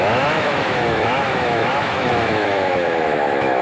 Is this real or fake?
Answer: fake